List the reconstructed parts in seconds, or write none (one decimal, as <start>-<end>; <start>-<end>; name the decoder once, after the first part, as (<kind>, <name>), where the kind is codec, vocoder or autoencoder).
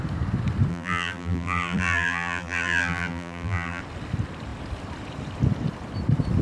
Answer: 0.7-3.8 (vocoder, BigVGAN v2)